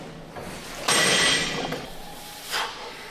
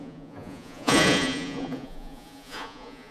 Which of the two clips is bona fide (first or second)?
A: first